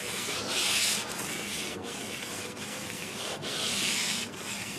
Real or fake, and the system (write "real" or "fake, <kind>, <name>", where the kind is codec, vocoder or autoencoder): fake, codec, SNAC